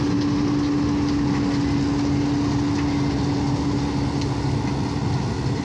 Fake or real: real